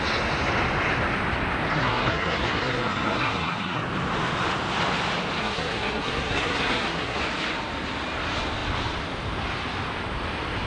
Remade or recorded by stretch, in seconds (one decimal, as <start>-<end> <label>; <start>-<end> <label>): 0.0-1.7 recorded; 1.7-3.8 remade; 3.8-5.4 recorded; 5.4-7.2 remade; 7.2-10.7 recorded